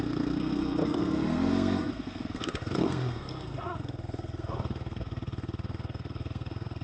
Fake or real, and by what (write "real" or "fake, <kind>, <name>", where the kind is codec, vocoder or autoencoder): fake, codec, SNAC